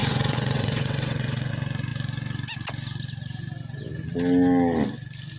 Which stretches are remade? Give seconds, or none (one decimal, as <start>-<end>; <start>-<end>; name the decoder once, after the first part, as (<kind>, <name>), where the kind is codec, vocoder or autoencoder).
0.0-1.5 (vocoder, WaveNeXt)